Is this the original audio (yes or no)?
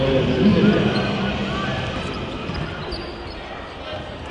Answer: yes